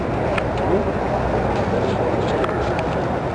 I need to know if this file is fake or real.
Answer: real